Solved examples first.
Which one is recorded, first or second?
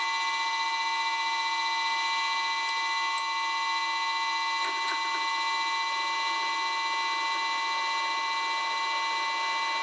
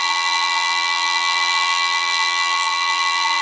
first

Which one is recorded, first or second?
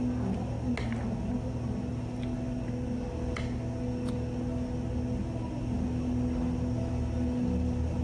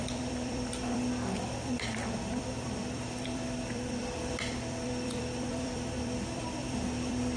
first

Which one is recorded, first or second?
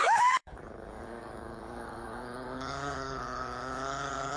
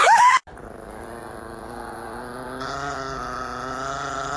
second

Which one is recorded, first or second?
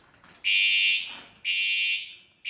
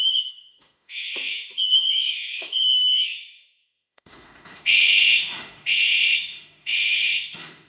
first